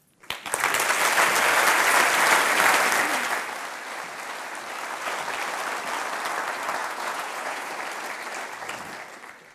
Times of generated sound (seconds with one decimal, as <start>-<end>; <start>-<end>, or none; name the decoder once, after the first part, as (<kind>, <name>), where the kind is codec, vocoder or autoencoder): 6.8-7.7 (vocoder, Vocos)